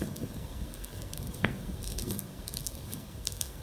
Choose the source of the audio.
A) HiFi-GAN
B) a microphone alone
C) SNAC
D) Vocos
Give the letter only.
C